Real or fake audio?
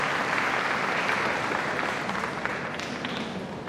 real